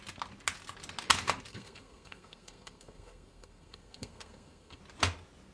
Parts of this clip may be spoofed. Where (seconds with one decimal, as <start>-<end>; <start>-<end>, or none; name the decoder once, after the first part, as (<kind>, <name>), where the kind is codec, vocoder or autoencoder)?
1.5-4.8 (codec, SNAC)